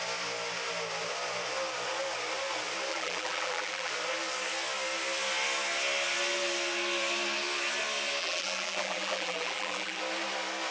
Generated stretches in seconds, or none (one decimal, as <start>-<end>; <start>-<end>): 2.9-3.9; 8.2-10.0